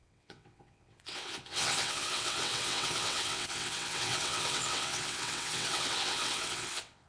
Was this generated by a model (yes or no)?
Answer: yes